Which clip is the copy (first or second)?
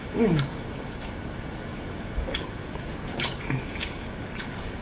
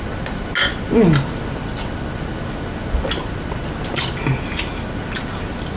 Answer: first